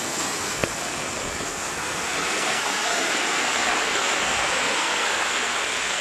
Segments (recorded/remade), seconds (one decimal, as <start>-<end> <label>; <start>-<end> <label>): 0.0-6.0 remade